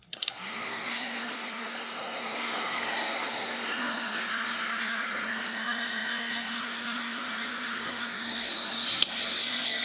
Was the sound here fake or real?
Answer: fake